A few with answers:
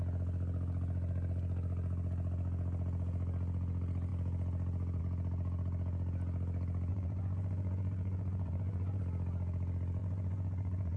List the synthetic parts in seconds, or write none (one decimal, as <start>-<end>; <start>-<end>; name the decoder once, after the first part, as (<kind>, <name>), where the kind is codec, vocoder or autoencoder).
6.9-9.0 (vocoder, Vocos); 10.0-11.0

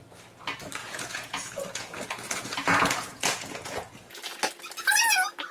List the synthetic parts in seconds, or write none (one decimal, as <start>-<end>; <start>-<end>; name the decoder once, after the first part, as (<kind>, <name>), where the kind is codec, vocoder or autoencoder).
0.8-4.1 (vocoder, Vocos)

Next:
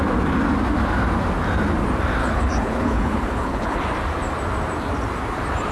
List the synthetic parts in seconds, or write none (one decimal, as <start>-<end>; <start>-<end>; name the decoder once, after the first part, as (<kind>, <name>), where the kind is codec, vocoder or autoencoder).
2.2-3.8 (codec, HILCodec)

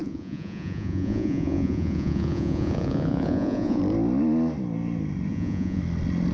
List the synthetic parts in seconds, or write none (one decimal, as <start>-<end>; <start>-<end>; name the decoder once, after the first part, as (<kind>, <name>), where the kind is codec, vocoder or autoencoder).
0.0-3.8 (vocoder, Vocos); 5.3-5.8